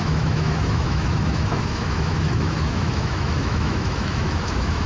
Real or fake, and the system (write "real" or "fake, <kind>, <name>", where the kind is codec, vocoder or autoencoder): fake, autoencoder, DAC-VAE